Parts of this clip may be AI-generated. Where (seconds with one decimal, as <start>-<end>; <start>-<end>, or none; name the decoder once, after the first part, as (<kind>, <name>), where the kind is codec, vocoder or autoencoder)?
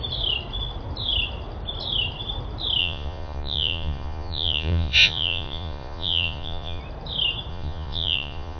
2.8-6.8 (vocoder, Vocos); 7.5-8.6